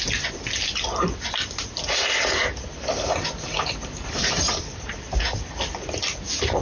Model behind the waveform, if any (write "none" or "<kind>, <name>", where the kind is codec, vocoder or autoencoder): none